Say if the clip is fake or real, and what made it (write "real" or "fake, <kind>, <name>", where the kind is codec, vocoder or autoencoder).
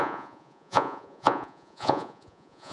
fake, vocoder, Vocos